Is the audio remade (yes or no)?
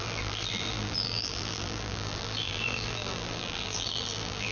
yes